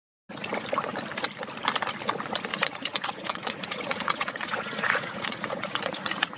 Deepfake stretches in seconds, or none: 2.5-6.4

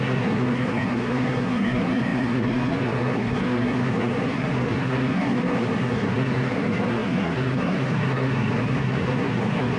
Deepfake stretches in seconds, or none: 0.0-9.8

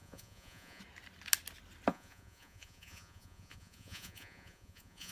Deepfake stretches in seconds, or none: 0.0-0.8; 1.9-5.1